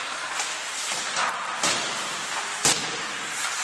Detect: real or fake fake